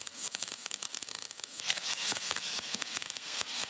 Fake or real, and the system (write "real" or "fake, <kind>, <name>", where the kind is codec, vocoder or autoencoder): fake, codec, SNAC